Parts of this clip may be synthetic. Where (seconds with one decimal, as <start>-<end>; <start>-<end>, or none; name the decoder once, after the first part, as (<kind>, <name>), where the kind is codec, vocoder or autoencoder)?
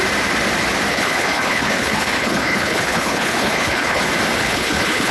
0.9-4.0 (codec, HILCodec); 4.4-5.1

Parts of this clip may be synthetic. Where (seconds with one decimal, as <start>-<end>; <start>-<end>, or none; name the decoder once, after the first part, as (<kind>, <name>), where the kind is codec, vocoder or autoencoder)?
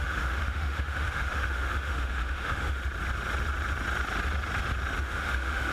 0.0-2.8 (autoencoder, DAC-VAE); 5.0-5.7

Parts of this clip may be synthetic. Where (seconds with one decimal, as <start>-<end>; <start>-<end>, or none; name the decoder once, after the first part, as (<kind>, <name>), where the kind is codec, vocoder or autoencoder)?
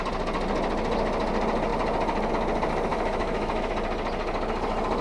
2.9-3.7 (autoencoder, DAC-VAE)